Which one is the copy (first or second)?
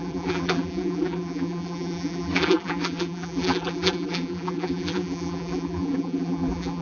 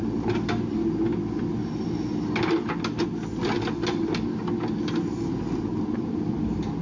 first